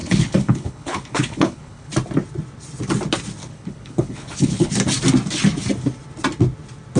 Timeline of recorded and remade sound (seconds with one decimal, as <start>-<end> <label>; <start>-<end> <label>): 0.0-1.9 remade; 1.9-3.4 recorded; 3.4-4.7 remade; 4.7-7.0 recorded